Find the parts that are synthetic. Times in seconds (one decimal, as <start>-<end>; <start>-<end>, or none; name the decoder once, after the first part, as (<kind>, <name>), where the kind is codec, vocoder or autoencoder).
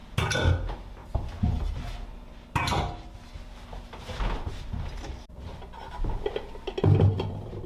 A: none